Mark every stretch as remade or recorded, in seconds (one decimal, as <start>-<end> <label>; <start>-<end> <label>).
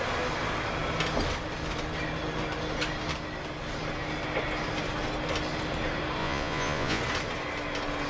0.0-6.2 recorded; 6.2-7.0 remade; 7.0-8.1 recorded